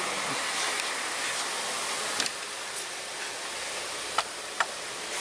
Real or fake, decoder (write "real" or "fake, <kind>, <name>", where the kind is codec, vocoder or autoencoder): real